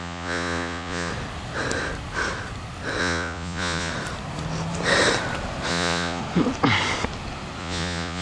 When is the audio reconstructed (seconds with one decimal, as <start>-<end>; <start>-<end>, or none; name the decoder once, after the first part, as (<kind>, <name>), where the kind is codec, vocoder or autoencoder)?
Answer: 0.0-1.1 (vocoder, Vocos); 3.0-3.9; 5.7-6.2; 7.6-8.2